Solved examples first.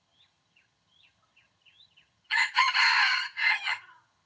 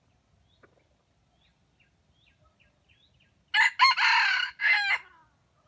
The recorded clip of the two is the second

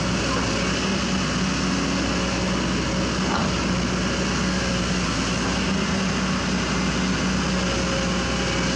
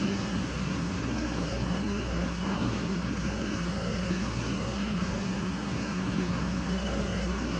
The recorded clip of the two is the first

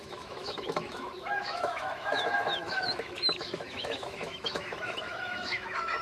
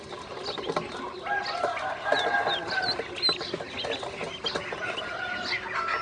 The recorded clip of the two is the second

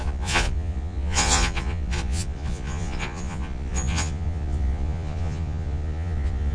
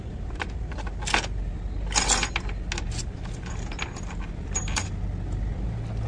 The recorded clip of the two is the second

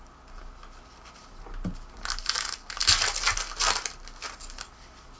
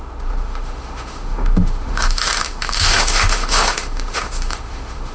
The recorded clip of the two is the first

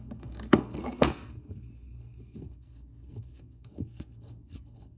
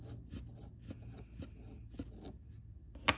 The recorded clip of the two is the second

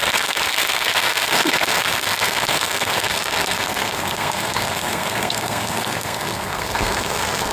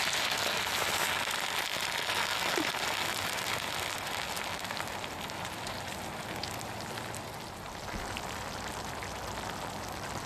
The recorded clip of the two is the second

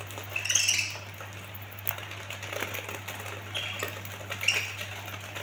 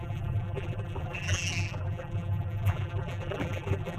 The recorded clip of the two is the first